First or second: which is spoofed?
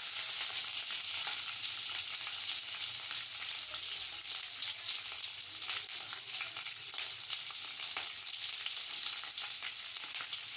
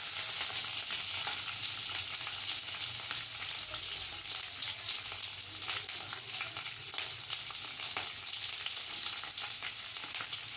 first